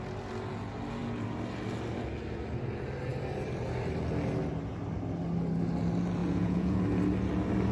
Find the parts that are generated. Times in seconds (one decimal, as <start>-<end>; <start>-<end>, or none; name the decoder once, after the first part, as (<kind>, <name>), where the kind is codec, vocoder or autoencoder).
6.2-6.8 (vocoder, Vocos)